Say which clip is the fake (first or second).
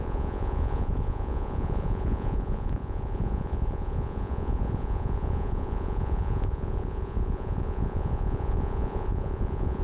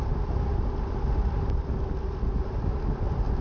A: first